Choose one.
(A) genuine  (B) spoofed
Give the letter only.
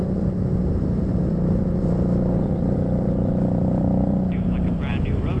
B